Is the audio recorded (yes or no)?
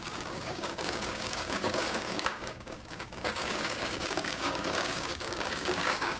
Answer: no